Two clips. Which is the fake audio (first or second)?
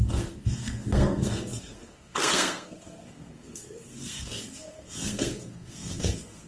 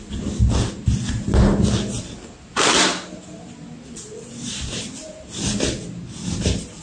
first